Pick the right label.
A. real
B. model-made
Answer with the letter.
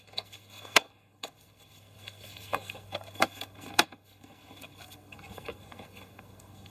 B